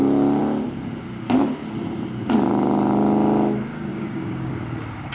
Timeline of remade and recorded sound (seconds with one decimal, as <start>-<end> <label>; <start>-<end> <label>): 0.0-3.9 recorded; 3.9-4.5 remade; 4.5-5.1 recorded